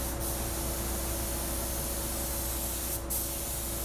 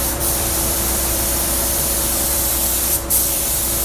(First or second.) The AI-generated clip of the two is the second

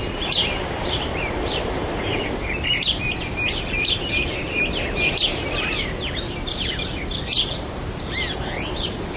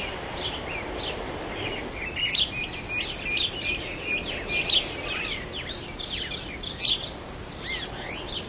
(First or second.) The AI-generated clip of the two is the first